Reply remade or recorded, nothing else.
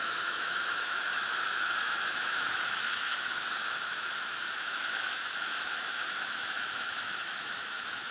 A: remade